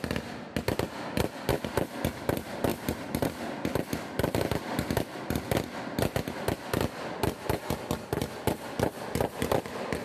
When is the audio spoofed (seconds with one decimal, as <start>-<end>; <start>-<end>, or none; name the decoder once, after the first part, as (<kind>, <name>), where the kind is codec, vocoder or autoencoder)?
none